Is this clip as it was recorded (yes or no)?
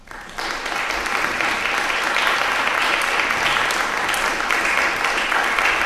yes